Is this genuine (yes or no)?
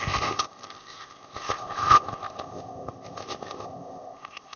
no